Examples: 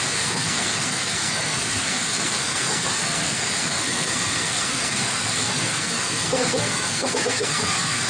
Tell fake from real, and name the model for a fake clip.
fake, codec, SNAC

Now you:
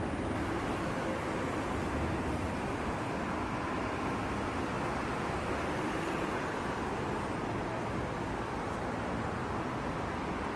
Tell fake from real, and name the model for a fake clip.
real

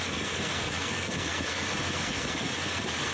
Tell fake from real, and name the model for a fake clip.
fake, codec, SNAC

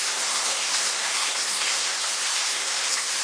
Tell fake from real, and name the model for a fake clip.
fake, codec, SNAC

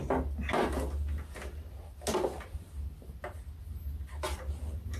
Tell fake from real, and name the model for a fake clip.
real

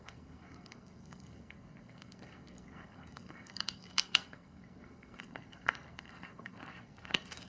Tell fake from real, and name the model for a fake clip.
fake, codec, SNAC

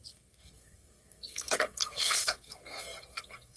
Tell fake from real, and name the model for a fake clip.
fake, codec, SNAC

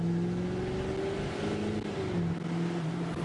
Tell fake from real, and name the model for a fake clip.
real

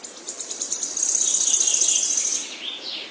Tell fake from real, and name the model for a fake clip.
real